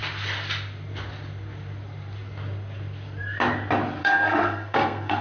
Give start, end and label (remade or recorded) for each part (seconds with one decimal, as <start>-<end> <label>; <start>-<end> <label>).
0.0-4.0 recorded; 4.0-5.2 remade